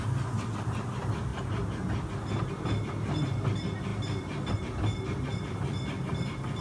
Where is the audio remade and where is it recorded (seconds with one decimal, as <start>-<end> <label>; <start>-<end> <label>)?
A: 0.0-6.6 recorded